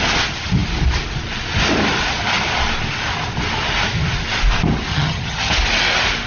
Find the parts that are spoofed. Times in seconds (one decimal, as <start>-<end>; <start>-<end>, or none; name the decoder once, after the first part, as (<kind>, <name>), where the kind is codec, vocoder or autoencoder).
4.9-5.5 (vocoder, HiFi-GAN)